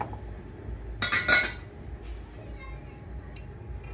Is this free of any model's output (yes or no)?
yes